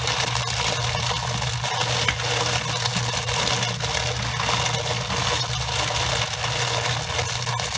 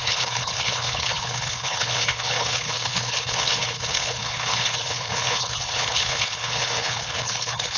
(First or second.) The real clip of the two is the first